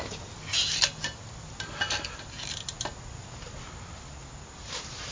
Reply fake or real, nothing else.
real